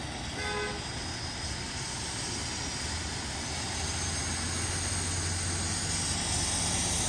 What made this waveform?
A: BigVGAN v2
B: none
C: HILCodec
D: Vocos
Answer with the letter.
B